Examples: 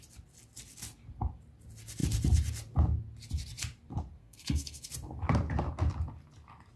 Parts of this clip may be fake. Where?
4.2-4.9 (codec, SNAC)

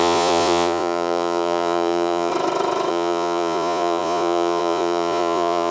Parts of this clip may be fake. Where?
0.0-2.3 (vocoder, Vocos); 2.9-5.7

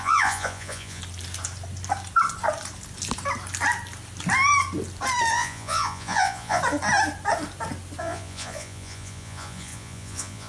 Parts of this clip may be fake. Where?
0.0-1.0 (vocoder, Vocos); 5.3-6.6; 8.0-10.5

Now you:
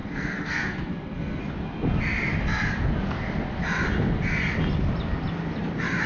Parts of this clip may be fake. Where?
0.0-1.4 (codec, SNAC)

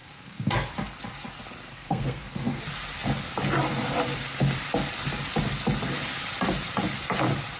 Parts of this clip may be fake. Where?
0.0-0.7 (codec, SNAC); 1.7-2.6

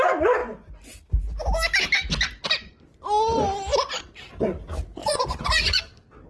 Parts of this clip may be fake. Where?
5.0-5.8 (vocoder, Vocos)